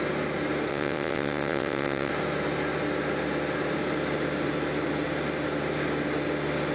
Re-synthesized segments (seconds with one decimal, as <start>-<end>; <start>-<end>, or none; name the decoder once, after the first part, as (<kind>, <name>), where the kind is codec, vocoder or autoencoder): 0.7-2.1 (vocoder, WaveNeXt)